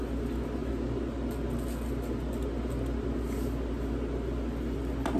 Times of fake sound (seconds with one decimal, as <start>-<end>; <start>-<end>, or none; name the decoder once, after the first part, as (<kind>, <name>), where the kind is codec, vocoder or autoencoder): none